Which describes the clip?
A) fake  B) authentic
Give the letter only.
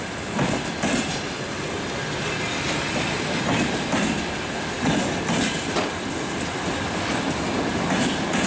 B